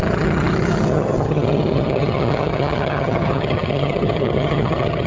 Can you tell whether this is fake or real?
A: fake